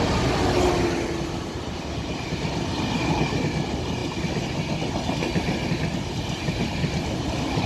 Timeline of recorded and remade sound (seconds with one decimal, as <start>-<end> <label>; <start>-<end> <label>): 0.0-7.7 recorded